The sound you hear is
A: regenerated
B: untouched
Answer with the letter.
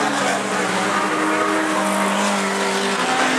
B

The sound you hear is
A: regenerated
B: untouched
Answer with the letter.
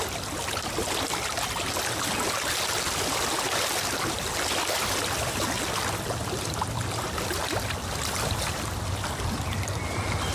B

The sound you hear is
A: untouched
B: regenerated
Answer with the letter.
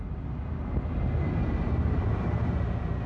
A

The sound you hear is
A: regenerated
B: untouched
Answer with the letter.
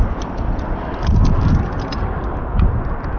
B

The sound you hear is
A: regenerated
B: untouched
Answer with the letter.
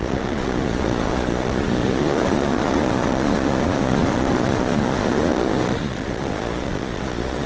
A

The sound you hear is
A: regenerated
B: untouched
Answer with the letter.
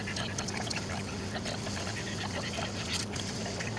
B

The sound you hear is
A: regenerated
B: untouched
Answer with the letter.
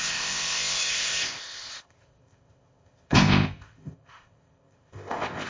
A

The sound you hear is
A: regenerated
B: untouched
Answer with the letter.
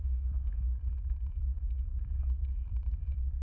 A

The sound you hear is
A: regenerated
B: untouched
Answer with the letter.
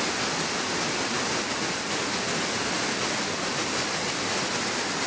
B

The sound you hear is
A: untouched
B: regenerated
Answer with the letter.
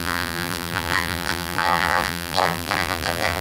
B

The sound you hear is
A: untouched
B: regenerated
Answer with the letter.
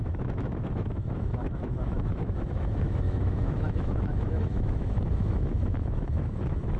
B